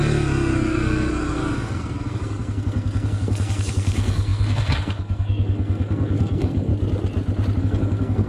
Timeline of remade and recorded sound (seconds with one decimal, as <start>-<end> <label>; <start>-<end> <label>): 0.0-6.7 remade; 6.7-7.6 recorded; 7.6-8.3 remade